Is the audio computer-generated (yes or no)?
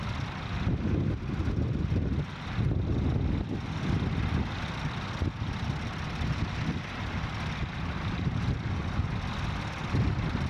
no